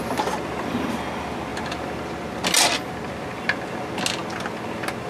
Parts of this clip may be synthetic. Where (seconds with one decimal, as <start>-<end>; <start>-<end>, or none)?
none